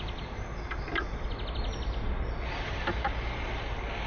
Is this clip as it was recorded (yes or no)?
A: yes